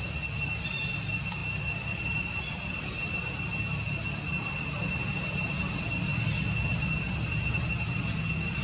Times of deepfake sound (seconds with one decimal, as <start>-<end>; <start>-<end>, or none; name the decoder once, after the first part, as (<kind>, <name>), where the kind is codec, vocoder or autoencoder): 1.4-2.8 (vocoder, BigVGAN v2); 6.1-8.2